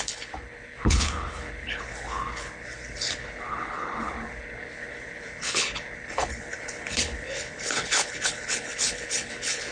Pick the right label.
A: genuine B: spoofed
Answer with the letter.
B